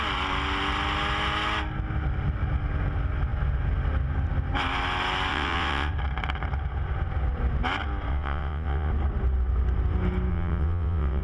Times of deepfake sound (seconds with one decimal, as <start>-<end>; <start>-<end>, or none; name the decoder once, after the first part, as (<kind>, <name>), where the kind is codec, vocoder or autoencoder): 5.3-5.9 (vocoder, WaveNeXt); 8.1-8.9; 10.3-11.2